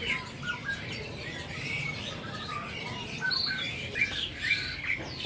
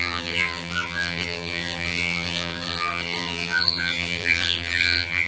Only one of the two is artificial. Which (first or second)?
second